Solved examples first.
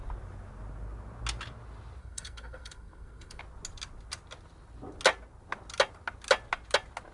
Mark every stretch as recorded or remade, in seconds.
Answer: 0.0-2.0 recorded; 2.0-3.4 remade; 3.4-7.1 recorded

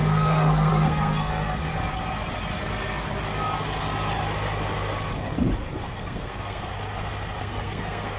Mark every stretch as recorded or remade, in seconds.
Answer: 0.0-1.7 remade; 1.7-5.8 recorded; 5.8-6.7 remade; 6.7-7.4 recorded; 7.4-8.2 remade

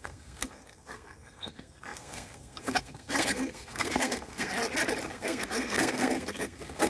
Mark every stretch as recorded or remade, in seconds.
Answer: 0.0-4.5 remade; 4.5-5.1 recorded; 5.1-6.9 remade

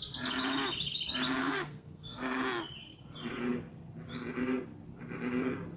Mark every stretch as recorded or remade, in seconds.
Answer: 0.0-1.4 recorded; 1.4-2.4 remade; 2.4-5.8 recorded

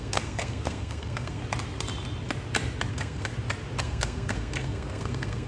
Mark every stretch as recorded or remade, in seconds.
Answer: 0.0-1.4 remade; 1.4-2.9 recorded; 2.9-3.3 remade; 3.3-3.8 recorded; 3.8-5.5 remade